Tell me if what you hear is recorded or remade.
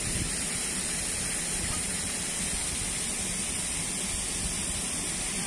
recorded